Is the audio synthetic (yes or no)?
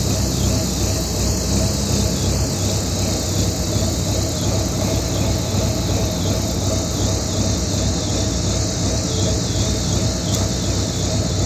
no